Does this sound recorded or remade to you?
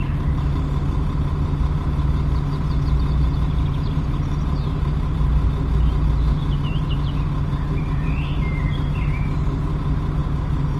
recorded